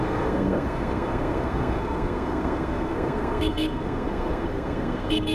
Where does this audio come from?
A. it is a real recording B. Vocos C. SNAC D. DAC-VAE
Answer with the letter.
C